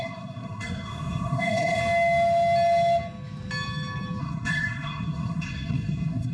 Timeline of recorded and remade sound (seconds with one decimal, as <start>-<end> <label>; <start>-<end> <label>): 0.0-1.8 remade; 1.8-4.2 recorded; 4.2-6.3 remade